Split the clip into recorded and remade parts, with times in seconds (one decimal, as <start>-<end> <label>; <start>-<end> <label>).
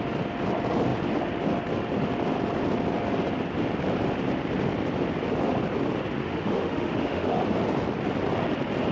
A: 0.0-6.2 recorded; 6.2-7.4 remade; 7.4-8.9 recorded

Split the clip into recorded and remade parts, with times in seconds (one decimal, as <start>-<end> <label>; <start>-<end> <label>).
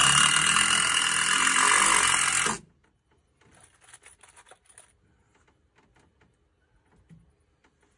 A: 0.0-8.0 recorded